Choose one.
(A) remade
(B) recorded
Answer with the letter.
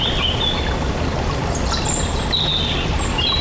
B